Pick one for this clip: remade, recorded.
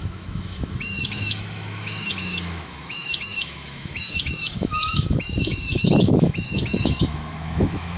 remade